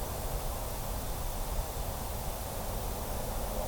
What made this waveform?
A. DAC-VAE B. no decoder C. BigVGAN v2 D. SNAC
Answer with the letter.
B